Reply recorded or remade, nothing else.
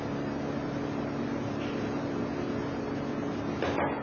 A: recorded